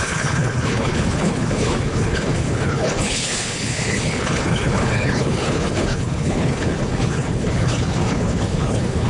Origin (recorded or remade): remade